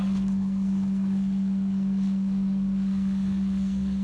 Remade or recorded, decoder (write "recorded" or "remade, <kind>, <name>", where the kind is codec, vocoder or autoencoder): remade, codec, SNAC